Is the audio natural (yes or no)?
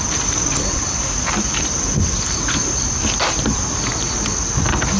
yes